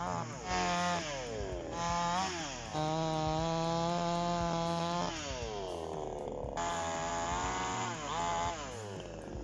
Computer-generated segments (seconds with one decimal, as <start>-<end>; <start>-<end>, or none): none